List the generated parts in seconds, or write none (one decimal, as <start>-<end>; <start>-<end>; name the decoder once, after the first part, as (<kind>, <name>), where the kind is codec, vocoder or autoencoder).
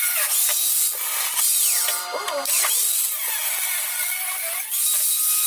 1.1-4.4 (vocoder, BigVGAN v2)